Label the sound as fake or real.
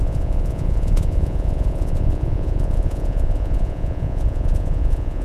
fake